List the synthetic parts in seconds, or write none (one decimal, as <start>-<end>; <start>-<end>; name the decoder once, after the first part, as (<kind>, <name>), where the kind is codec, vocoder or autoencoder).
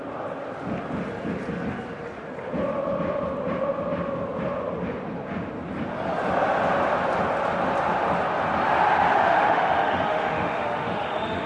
9.3-11.5 (autoencoder, DAC-VAE)